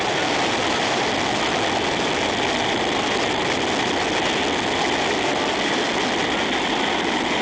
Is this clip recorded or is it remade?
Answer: recorded